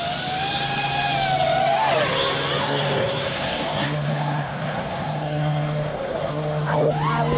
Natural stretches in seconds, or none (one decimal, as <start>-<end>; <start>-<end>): 0.0-2.6; 6.9-7.4